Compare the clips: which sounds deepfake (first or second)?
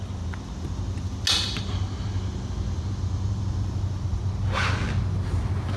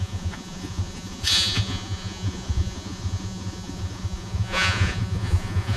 second